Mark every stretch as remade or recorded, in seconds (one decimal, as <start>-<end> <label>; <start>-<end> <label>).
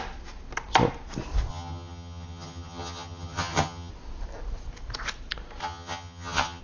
0.0-1.5 recorded; 1.5-3.9 remade; 3.9-5.6 recorded; 5.6-6.6 remade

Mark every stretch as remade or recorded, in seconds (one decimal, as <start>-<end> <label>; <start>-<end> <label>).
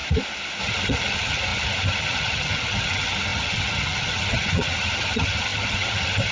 0.0-0.6 recorded; 0.6-6.3 remade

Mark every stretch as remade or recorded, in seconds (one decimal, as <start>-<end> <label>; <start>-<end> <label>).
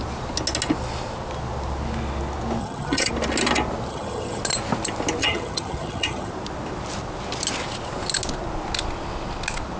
0.0-2.6 recorded; 2.6-3.1 remade; 3.1-3.9 recorded; 3.9-4.4 remade; 4.4-5.2 recorded; 5.2-6.3 remade; 6.3-9.8 recorded